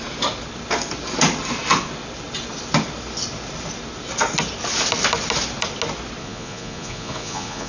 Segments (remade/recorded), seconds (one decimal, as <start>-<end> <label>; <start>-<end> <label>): 0.0-6.2 recorded; 6.2-7.7 remade